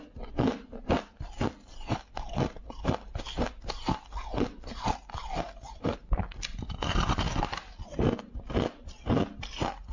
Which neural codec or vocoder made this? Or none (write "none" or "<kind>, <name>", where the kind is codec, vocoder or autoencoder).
none